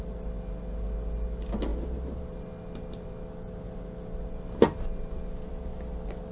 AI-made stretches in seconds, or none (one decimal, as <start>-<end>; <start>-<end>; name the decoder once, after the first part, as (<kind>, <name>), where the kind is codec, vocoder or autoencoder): none